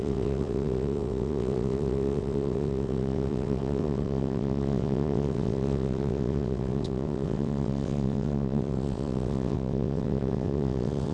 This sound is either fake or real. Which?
fake